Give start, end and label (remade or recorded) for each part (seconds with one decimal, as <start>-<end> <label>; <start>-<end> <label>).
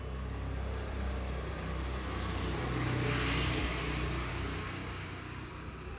0.0-4.3 recorded; 4.3-5.5 remade; 5.5-6.0 recorded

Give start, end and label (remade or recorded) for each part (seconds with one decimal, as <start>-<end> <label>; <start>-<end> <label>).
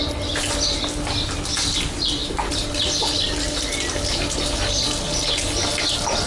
0.0-6.3 recorded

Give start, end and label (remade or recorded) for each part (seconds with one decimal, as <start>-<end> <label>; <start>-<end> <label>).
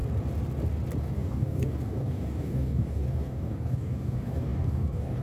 0.0-1.0 recorded; 1.0-5.2 remade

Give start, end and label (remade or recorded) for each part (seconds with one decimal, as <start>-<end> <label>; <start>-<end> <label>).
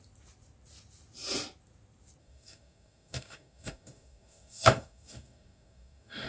0.0-2.2 recorded; 2.2-6.3 remade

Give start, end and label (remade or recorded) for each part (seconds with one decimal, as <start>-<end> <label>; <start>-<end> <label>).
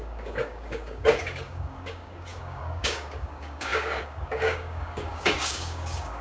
0.0-6.2 remade